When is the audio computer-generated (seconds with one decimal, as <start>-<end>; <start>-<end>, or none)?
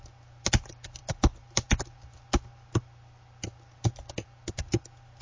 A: none